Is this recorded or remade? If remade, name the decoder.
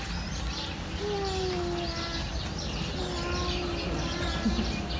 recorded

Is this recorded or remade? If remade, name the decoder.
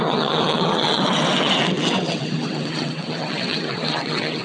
remade, vocoder, WaveNeXt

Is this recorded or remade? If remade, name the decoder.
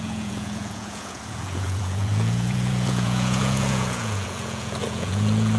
remade, vocoder, Vocos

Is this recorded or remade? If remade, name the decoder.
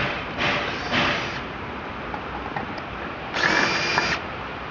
recorded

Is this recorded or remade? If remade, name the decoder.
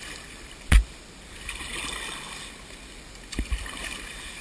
recorded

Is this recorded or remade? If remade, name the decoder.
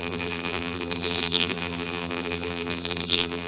remade, vocoder, BigVGAN v2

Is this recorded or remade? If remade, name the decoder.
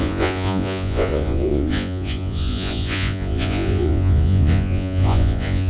remade, vocoder, Vocos